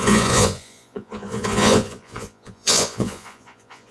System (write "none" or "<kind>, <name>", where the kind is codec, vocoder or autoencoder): vocoder, Vocos